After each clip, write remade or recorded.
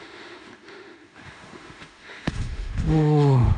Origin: remade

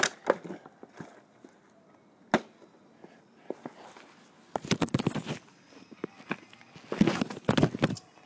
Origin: recorded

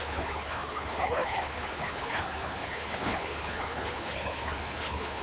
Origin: remade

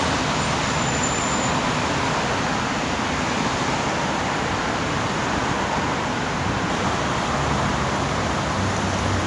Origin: recorded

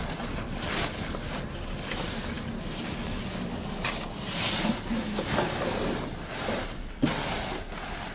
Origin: recorded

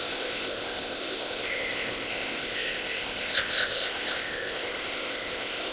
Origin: remade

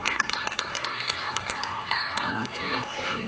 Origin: remade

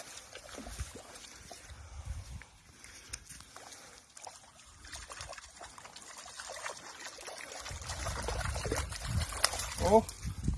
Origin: recorded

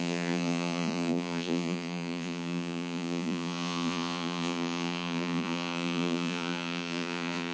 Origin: remade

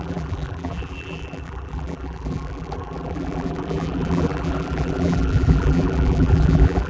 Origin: remade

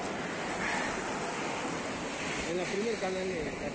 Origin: recorded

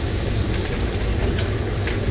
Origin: remade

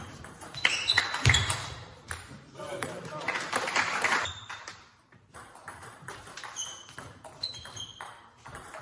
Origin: remade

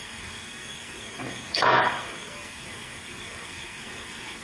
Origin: remade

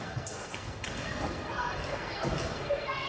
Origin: remade